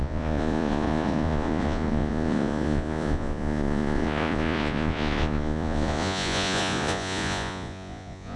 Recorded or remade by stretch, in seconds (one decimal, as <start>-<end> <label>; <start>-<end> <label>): 0.0-8.4 remade